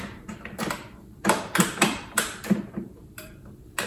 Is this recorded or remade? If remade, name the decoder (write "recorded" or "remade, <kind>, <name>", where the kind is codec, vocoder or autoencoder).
remade, vocoder, BigVGAN v2